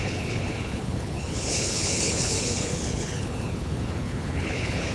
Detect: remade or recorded remade